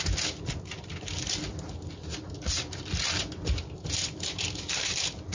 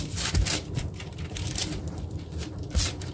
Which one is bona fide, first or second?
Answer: first